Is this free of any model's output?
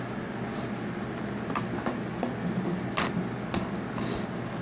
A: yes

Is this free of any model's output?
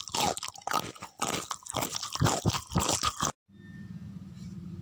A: yes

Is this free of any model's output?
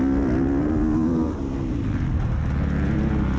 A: yes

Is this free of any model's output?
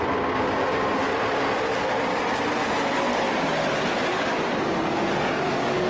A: yes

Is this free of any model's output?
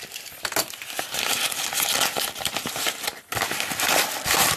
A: yes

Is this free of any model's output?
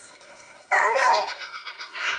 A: no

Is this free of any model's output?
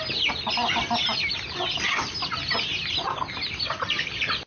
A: yes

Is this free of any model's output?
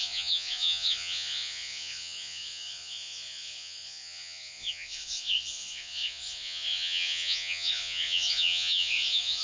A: no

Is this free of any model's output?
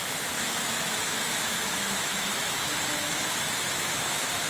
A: no